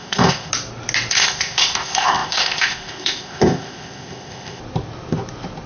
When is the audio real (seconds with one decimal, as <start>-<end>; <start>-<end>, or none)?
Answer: 0.5-1.1; 4.6-5.7